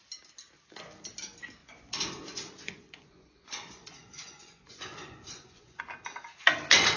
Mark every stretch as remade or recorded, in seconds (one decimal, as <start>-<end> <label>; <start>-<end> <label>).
0.0-1.6 recorded; 1.6-5.8 remade; 5.8-7.0 recorded